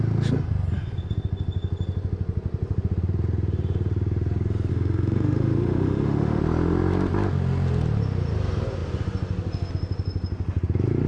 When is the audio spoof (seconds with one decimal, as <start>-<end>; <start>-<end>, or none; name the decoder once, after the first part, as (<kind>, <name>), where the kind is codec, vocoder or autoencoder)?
4.7-6.4 (autoencoder, DAC-VAE)